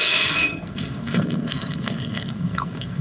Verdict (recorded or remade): remade